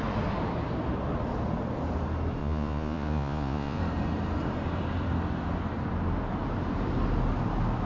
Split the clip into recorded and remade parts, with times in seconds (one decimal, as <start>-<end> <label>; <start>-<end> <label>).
0.0-2.4 recorded; 2.4-3.8 remade; 3.8-7.9 recorded